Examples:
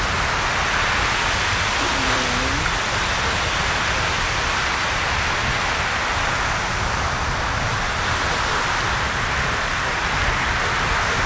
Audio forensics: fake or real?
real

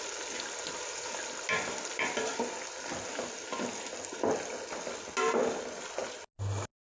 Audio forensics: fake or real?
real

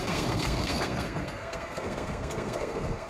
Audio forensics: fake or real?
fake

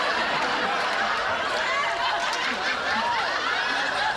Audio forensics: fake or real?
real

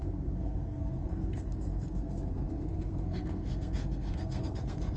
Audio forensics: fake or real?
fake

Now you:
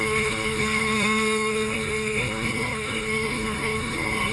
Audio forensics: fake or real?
fake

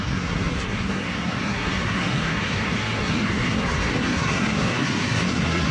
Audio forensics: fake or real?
fake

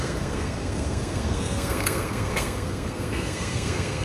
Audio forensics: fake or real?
fake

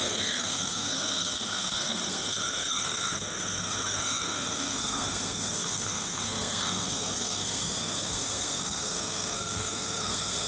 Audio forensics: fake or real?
fake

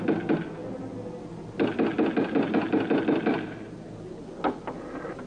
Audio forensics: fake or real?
real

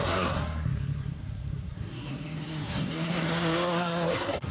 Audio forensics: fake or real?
fake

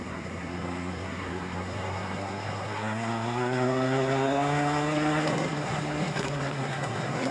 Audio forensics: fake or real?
fake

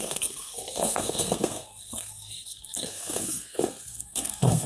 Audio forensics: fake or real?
fake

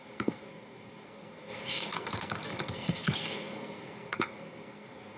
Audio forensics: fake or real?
fake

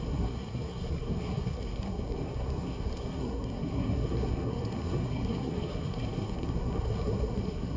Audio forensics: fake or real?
fake